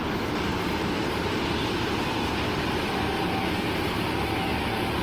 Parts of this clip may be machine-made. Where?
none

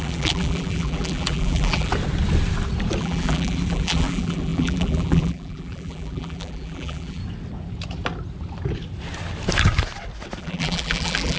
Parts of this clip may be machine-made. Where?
0.0-1.9 (vocoder, BigVGAN v2); 3.0-7.2; 10.4-11.4

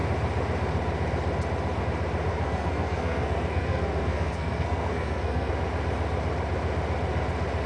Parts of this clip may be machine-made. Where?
2.3-5.5 (codec, SNAC)

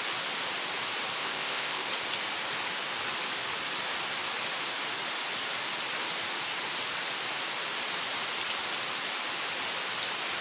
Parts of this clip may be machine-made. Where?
1.2-1.9 (codec, ZipCodec)

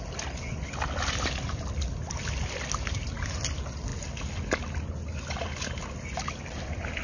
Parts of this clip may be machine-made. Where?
none

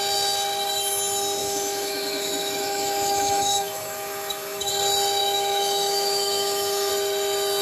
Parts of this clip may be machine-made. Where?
1.4-4.7 (autoencoder, DAC-VAE); 5.2-6.9

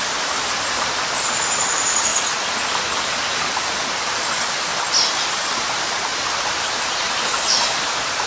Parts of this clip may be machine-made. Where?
0.0-2.1 (vocoder, BigVGAN v2); 2.7-4.7; 5.3-8.3

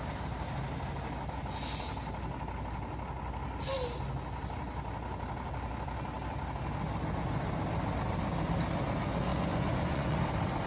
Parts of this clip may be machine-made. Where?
9.3-10.2 (vocoder, Vocos)